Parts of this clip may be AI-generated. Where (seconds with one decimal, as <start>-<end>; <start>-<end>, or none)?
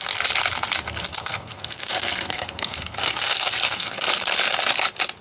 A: 1.1-4.1